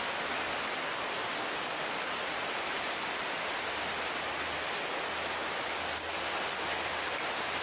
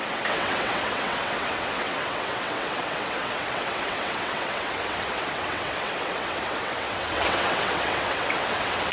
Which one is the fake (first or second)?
second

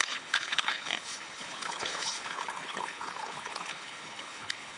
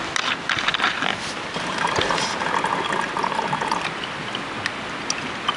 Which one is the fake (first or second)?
first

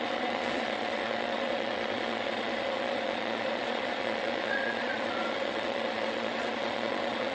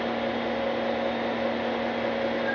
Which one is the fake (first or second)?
first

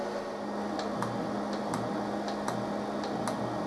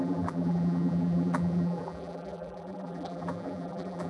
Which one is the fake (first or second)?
second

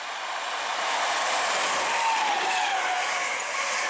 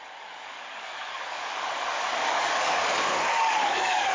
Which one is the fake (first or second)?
second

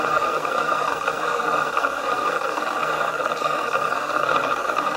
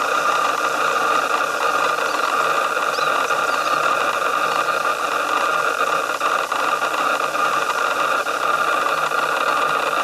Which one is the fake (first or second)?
first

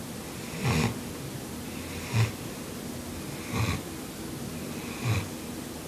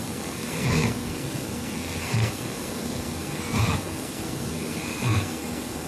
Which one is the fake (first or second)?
second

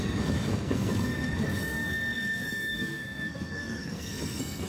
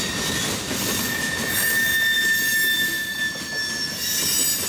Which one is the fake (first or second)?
first